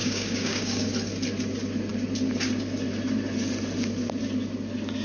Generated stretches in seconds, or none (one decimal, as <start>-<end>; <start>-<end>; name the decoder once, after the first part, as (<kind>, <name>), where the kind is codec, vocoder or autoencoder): 0.0-0.9 (codec, DAC)